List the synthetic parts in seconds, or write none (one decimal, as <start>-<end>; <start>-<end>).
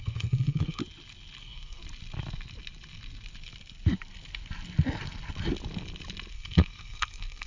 0.0-0.8; 1.4-1.8; 6.3-7.5